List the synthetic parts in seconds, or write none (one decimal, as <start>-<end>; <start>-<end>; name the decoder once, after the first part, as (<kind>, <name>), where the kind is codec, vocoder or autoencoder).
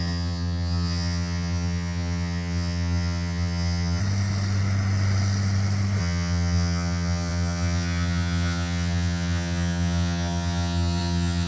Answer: 0.0-4.0 (vocoder, HiFi-GAN); 6.0-11.5